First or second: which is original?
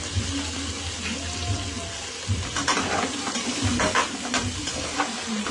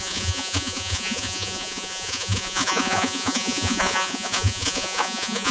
first